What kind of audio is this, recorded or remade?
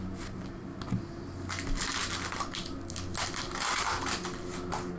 recorded